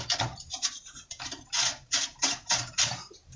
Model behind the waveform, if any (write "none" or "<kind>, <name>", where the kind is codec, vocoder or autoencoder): vocoder, BigVGAN v2